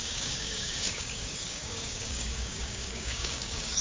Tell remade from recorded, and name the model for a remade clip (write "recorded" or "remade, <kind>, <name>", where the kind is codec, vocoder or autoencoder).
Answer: remade, codec, DAC